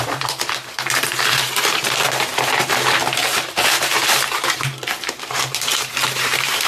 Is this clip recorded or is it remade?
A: remade